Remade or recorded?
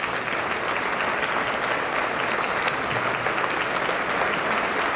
recorded